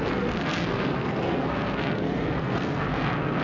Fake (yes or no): yes